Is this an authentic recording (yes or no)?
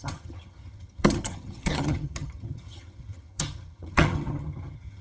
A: no